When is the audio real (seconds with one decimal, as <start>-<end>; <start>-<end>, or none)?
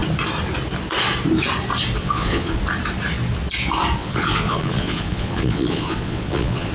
0.0-2.0; 2.6-4.0